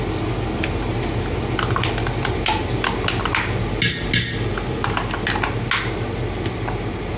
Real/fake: real